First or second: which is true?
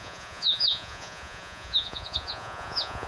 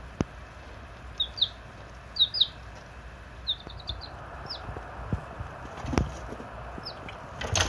second